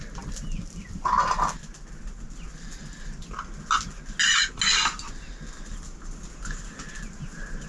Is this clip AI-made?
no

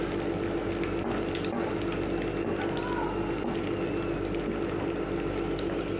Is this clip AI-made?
no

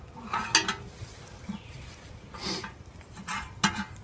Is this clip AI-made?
no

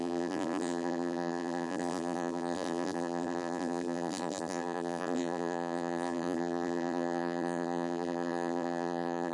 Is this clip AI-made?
yes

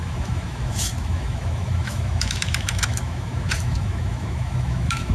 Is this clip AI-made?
yes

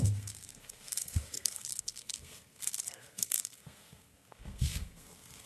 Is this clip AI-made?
yes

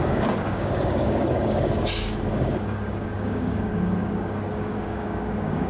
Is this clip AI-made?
yes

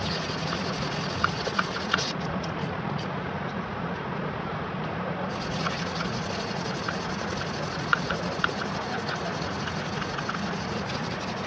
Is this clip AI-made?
yes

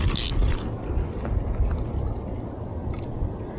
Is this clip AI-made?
no